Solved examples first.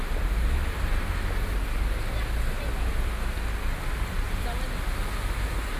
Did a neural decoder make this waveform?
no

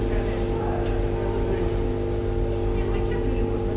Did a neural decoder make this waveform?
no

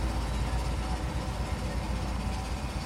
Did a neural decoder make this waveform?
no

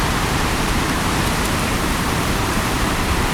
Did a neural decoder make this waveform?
yes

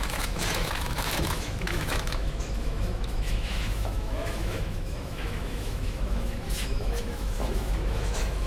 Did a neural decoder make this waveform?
yes